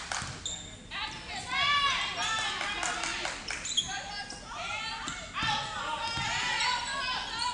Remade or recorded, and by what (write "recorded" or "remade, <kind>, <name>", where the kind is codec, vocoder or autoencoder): recorded